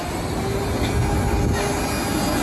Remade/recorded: recorded